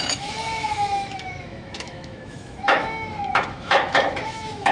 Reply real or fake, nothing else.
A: fake